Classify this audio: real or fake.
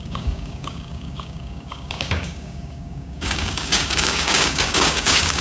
fake